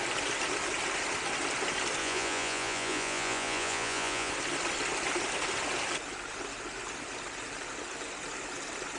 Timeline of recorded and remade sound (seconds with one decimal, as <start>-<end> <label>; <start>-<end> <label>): 0.0-2.0 recorded; 2.0-4.3 remade; 4.3-9.0 recorded